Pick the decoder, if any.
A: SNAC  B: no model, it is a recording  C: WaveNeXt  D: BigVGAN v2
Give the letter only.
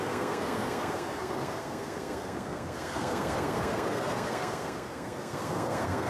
A